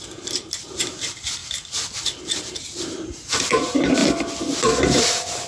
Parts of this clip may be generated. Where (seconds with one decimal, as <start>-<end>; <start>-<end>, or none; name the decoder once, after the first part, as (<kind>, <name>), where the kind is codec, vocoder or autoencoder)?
0.0-1.4 (vocoder, BigVGAN v2); 2.2-4.0; 5.0-5.5

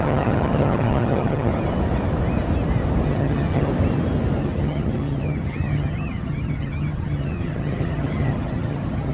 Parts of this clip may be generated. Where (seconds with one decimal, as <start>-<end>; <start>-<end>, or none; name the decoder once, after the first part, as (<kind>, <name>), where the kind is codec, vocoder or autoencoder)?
0.0-1.5 (vocoder, HiFi-GAN); 3.1-3.7; 4.4-9.1

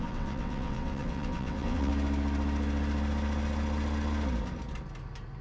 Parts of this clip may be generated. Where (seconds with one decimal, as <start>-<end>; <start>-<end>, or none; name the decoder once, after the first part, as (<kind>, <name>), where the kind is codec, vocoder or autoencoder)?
0.0-1.9 (vocoder, WaveNeXt)

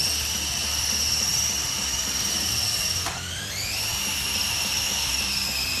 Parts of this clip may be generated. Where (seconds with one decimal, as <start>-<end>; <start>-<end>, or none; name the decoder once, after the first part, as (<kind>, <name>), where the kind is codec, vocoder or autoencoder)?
none

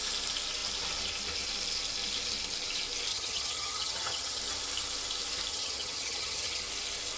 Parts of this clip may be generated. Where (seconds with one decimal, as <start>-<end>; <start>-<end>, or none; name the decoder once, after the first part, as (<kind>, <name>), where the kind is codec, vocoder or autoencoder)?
3.1-4.4 (vocoder, HiFi-GAN); 5.5-6.6

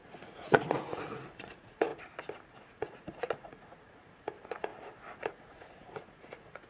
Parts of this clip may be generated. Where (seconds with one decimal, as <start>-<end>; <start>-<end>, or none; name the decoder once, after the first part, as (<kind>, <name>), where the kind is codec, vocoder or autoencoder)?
0.0-1.9 (vocoder, Vocos); 2.6-4.7; 5.3-6.7